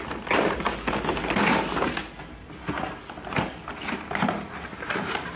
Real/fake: real